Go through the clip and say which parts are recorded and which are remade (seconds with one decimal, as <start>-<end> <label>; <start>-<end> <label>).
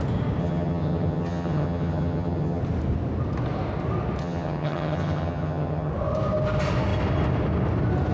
0.0-0.4 recorded; 0.4-2.6 remade; 2.6-4.2 recorded; 4.2-5.9 remade; 5.9-8.1 recorded